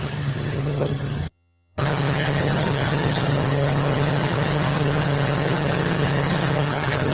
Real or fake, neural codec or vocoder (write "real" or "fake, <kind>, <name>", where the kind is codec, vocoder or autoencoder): fake, vocoder, HiFi-GAN